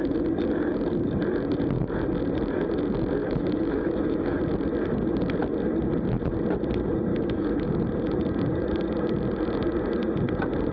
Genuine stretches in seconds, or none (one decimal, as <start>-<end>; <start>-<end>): 0.0-3.2; 4.4-7.1; 7.8-10.7